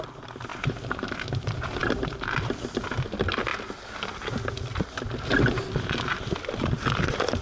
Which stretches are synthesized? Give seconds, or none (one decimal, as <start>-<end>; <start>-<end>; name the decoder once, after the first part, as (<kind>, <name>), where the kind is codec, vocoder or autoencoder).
0.5-1.1 (vocoder, BigVGAN v2); 1.8-2.3